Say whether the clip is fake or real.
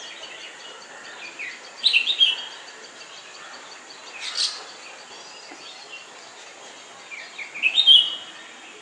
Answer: real